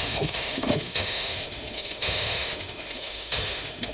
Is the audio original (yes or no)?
no